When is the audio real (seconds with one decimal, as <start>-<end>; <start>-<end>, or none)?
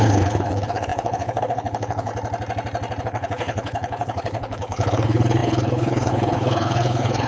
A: 2.1-3.0